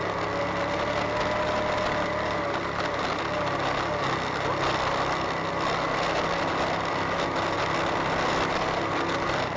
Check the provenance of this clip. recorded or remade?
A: recorded